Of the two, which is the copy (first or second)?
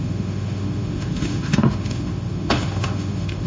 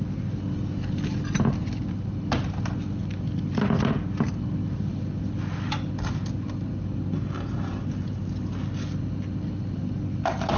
first